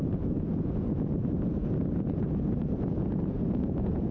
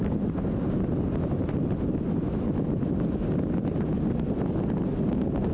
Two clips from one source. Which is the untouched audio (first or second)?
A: second